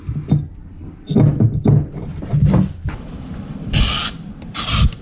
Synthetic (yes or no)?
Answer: no